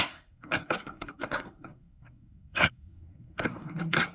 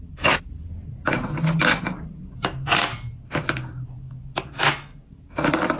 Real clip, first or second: second